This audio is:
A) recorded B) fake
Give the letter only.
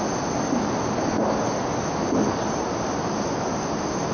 A